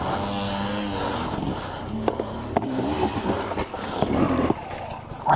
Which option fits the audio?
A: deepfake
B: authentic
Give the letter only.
B